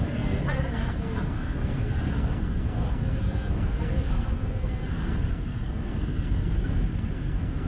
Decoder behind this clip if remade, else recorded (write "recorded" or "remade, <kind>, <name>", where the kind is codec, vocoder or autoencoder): remade, codec, SNAC